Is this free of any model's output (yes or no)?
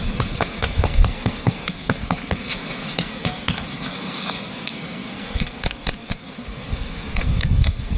no